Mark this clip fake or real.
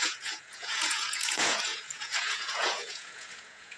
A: fake